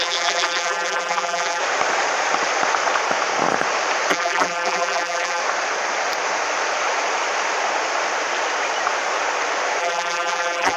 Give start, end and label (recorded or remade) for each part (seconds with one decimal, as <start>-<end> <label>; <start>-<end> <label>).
0.0-1.6 remade; 1.6-4.1 recorded; 4.1-5.4 remade; 5.4-9.8 recorded; 9.8-10.8 remade